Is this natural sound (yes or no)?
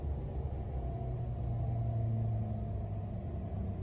yes